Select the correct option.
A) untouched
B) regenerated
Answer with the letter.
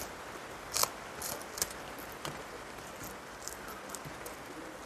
A